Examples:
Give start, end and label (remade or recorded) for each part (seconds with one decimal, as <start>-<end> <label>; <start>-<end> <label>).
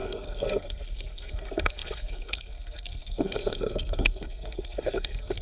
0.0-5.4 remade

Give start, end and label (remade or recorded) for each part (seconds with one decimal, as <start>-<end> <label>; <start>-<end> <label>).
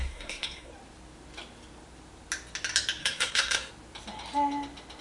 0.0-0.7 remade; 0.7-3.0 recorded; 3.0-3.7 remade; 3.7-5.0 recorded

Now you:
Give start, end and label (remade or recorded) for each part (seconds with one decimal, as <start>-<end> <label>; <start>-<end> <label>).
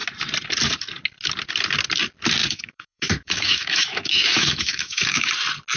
0.0-2.4 recorded; 2.4-5.3 remade; 5.3-5.8 recorded